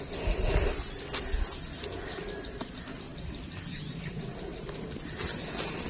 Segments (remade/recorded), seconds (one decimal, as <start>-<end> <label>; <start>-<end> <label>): 0.0-5.9 recorded